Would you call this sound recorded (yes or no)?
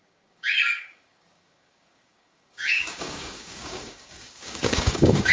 no